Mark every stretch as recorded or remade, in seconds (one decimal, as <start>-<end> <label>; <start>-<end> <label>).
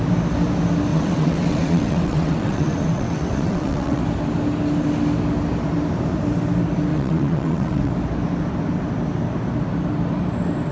0.0-0.9 recorded; 0.9-4.0 remade; 4.0-6.9 recorded; 6.9-7.9 remade; 7.9-10.7 recorded